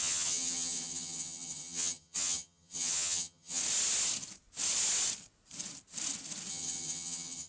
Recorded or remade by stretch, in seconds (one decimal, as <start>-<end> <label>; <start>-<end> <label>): 0.0-3.6 remade; 3.6-6.5 recorded; 6.5-7.5 remade